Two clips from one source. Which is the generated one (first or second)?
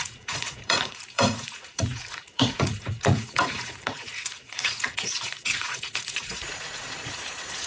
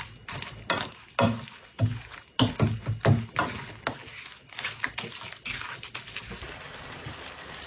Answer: first